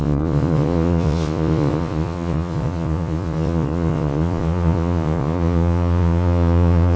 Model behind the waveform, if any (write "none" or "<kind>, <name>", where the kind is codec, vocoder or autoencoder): vocoder, Vocos